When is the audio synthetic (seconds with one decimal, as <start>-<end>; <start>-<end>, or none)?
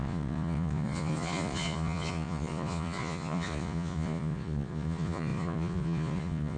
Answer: 0.0-6.6